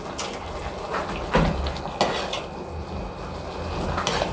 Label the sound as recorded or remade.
recorded